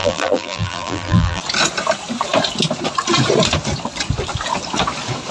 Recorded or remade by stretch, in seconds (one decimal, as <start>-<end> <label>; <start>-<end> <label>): 0.0-1.4 remade; 1.4-5.3 recorded